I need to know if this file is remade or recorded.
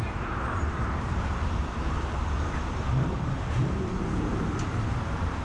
remade